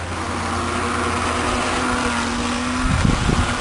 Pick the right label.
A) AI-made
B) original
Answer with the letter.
B